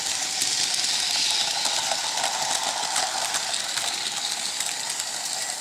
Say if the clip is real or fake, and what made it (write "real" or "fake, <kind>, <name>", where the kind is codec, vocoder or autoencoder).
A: real